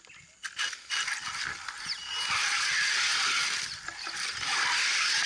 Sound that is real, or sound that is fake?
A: real